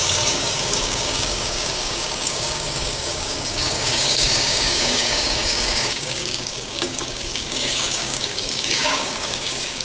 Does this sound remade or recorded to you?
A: remade